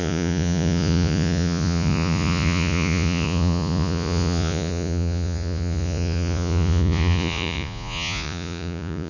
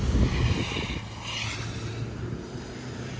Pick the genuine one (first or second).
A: second